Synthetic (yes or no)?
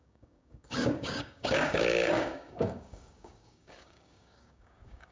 yes